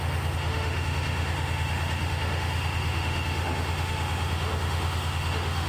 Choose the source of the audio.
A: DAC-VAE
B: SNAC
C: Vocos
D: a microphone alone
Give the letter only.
A